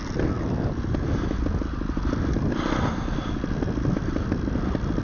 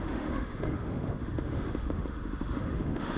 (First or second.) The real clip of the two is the first